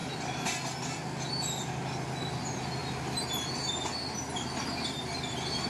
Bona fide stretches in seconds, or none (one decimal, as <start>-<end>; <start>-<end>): 0.0-5.7